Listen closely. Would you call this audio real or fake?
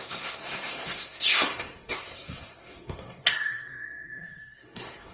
fake